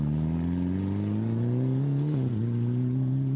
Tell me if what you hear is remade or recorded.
recorded